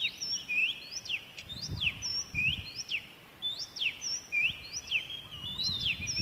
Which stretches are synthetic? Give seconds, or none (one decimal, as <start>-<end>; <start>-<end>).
0.6-1.5; 2.1-2.9; 3.3-4.5